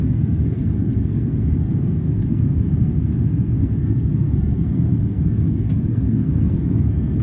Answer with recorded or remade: remade